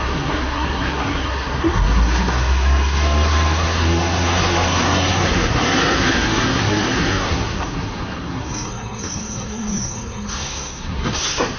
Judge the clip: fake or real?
fake